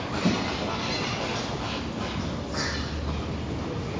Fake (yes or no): no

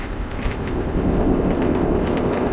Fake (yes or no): yes